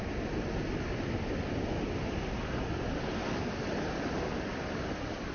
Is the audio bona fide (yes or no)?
yes